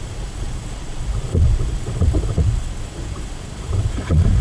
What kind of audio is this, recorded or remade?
remade